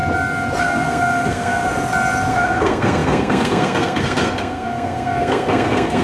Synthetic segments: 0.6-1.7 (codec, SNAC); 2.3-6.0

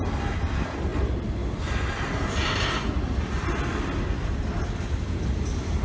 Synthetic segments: none

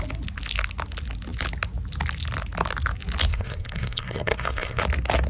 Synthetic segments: 3.3-4.8 (codec, SNAC)

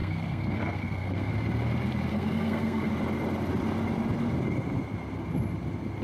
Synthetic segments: 0.0-1.3 (codec, SNAC); 2.1-2.9

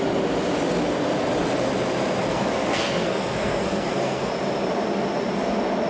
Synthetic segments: 2.3-4.3 (codec, SNAC)